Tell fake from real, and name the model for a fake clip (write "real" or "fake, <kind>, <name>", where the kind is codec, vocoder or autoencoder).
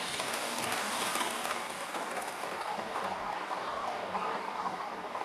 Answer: fake, codec, DAC